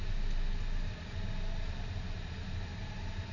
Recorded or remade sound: recorded